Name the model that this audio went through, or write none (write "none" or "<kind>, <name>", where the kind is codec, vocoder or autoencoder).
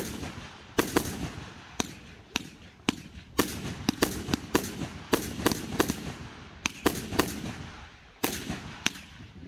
vocoder, BigVGAN v2